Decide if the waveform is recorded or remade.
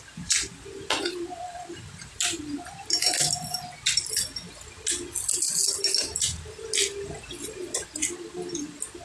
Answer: recorded